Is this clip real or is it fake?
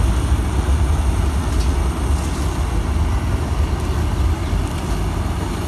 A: real